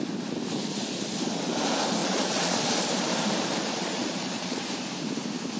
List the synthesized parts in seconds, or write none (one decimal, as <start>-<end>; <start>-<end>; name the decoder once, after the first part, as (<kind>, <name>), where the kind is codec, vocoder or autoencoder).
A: 2.0-2.9 (vocoder, Vocos); 3.7-4.6